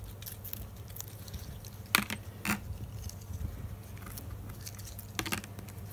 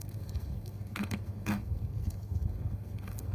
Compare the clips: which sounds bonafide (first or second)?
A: first